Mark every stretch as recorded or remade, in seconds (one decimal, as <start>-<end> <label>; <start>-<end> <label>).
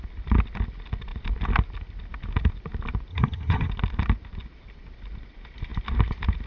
0.0-3.1 recorded; 3.1-3.7 remade; 3.7-6.5 recorded